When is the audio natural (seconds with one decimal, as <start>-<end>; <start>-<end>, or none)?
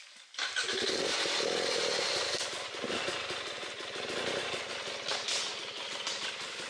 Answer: 0.0-6.7